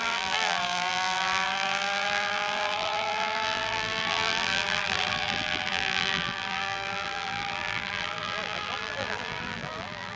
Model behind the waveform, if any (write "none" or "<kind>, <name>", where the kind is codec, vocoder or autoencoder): vocoder, BigVGAN v2